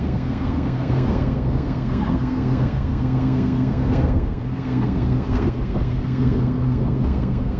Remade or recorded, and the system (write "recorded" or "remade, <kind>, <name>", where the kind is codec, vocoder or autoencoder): remade, codec, SNAC